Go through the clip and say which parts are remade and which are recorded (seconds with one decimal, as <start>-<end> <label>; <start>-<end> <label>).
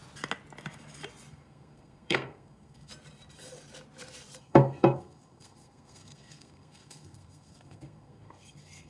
0.0-1.3 recorded; 1.3-2.9 remade; 2.9-4.4 recorded; 4.4-8.9 remade